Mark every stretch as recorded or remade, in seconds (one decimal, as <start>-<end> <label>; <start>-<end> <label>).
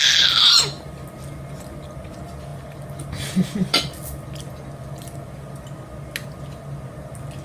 0.0-7.4 recorded